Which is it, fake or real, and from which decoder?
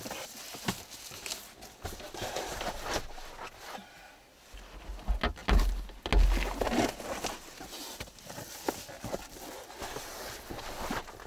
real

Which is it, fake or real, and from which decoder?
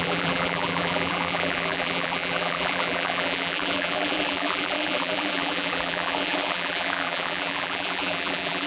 fake, vocoder, BigVGAN v2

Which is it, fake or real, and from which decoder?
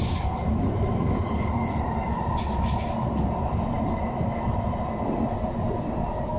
fake, vocoder, BigVGAN v2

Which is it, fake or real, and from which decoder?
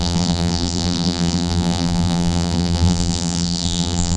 fake, vocoder, BigVGAN v2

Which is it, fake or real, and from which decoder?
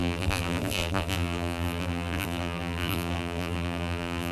fake, vocoder, BigVGAN v2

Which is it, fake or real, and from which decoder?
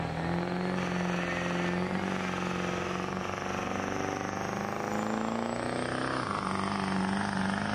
real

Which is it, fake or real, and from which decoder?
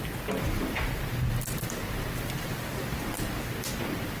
real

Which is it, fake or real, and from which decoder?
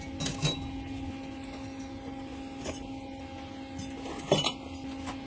real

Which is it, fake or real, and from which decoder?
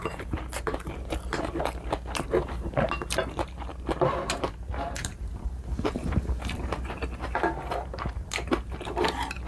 fake, vocoder, BigVGAN v2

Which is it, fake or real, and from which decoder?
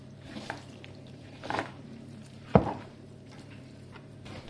fake, vocoder, BigVGAN v2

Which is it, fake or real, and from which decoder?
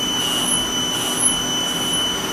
real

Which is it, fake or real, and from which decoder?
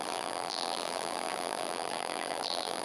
fake, vocoder, BigVGAN v2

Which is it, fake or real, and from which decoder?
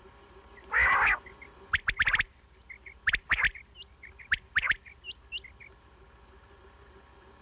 real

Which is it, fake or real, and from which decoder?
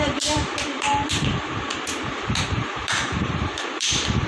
fake, vocoder, BigVGAN v2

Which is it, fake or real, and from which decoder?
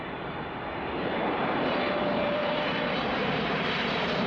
fake, vocoder, BigVGAN v2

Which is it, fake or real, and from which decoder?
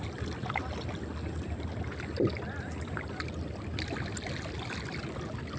real